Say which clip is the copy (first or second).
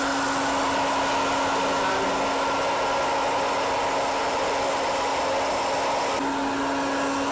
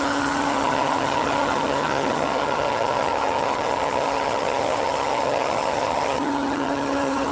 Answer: second